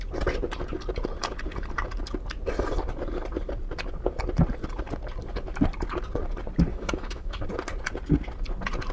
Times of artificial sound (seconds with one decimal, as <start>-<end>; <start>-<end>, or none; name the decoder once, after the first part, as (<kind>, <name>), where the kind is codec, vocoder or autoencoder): 6.7-7.4 (autoencoder, DAC-VAE)